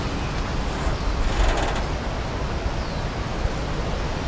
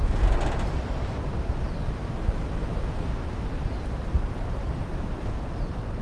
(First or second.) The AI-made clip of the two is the second